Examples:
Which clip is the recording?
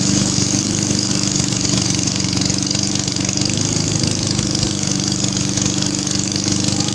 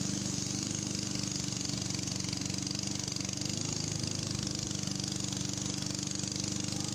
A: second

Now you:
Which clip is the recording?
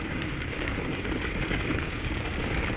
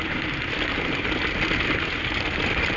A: second